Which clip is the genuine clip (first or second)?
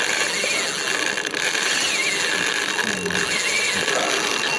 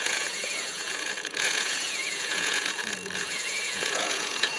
first